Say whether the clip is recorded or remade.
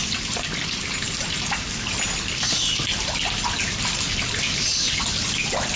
recorded